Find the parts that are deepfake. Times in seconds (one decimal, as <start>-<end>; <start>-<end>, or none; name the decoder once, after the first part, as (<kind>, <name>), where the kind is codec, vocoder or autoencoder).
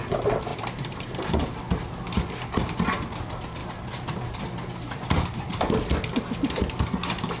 0.5-1.6 (vocoder, BigVGAN v2); 3.6-5.6